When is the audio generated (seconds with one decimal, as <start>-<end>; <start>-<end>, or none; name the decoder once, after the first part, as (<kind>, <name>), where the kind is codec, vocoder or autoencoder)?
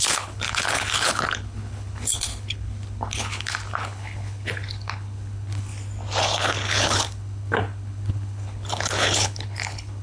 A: 0.0-5.7 (codec, HILCodec); 6.2-10.0